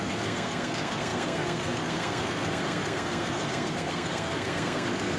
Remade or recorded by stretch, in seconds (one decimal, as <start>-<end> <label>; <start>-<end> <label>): 0.0-5.2 remade